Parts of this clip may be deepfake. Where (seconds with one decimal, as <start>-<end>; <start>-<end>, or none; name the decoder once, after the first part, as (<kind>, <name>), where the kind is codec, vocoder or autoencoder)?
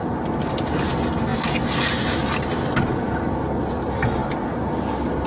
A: none